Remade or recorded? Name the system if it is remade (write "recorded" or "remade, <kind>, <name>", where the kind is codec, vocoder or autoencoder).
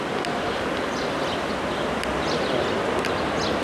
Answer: recorded